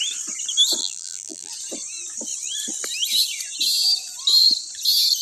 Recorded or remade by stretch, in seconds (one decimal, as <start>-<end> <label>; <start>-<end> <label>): 0.0-0.8 recorded; 0.8-1.5 remade; 1.5-5.2 recorded